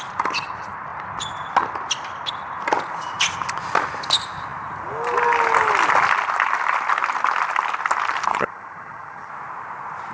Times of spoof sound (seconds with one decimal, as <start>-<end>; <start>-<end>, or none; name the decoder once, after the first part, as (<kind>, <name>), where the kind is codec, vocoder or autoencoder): 8.3-9.3 (vocoder, HiFi-GAN)